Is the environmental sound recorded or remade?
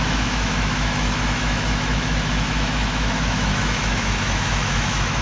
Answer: remade